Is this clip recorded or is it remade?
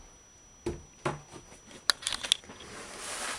recorded